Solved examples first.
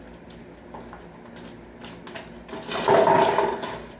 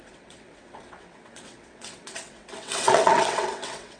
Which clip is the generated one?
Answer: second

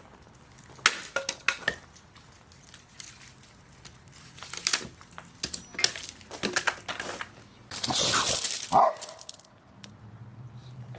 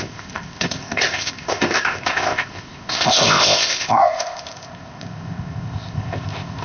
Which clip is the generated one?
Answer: second